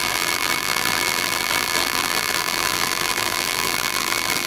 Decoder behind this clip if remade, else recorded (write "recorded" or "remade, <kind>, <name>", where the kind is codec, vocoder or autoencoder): remade, vocoder, BigVGAN v2